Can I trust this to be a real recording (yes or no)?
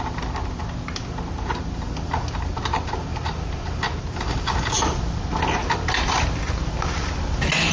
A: yes